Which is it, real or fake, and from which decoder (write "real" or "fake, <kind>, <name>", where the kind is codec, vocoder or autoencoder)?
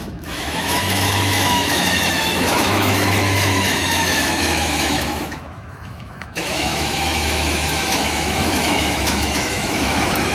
fake, autoencoder, DAC-VAE